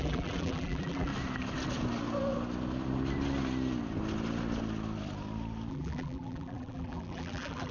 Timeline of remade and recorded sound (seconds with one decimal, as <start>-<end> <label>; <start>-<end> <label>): 0.0-1.1 remade; 1.1-5.7 recorded; 5.7-7.7 remade